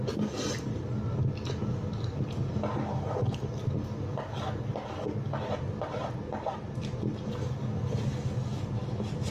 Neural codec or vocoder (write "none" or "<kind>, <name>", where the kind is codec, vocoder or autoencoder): none